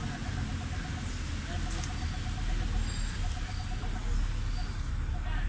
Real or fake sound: real